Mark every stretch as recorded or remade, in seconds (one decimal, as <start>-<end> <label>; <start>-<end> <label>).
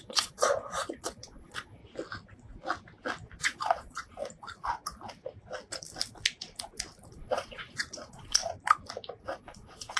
0.0-1.8 remade; 1.8-3.4 recorded; 3.4-4.2 remade; 4.2-7.1 recorded; 7.1-8.4 remade; 8.4-9.2 recorded; 9.2-10.0 remade